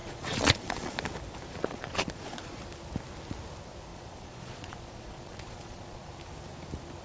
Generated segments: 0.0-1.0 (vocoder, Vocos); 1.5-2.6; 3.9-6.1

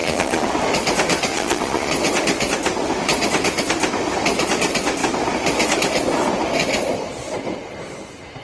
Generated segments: 0.0-0.5 (vocoder, Vocos); 1.3-1.9

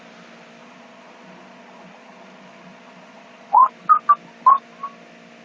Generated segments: 0.6-3.7 (vocoder, Vocos)

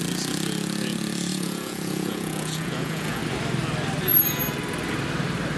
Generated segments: 1.3-3.2 (vocoder, Vocos)

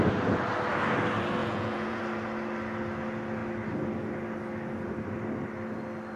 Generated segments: 1.4-2.0 (vocoder, Vocos)

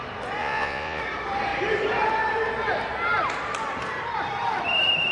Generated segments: 0.4-1.0 (vocoder, Vocos)

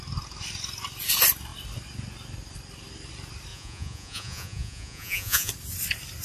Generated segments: 3.5-5.5 (vocoder, Vocos)